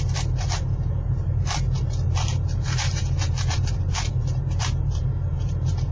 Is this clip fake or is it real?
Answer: fake